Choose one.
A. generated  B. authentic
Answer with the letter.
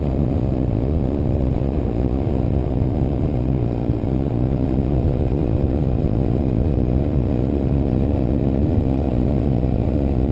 A